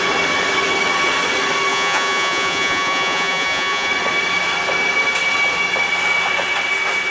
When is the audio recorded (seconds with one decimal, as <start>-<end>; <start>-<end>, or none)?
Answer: 0.0-1.7; 3.9-7.1